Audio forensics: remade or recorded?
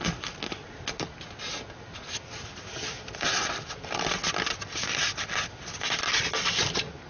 recorded